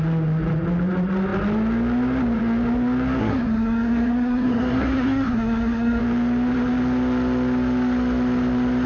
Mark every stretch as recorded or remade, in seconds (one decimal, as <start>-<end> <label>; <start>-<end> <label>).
0.0-3.2 recorded; 3.2-6.0 remade; 6.0-8.9 recorded